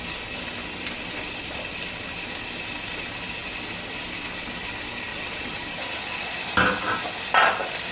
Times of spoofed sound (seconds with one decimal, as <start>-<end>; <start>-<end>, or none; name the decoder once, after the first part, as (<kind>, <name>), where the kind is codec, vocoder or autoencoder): 5.1-6.4 (vocoder, Vocos)